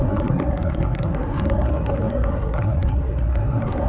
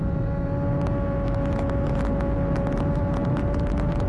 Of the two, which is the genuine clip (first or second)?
second